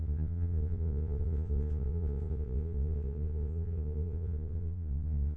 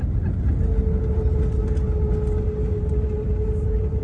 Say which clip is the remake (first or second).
first